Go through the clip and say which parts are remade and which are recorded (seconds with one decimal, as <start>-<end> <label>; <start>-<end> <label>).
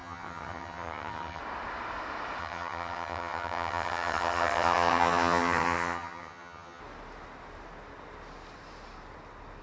0.0-1.4 remade; 1.4-2.4 recorded; 2.4-6.8 remade; 6.8-9.6 recorded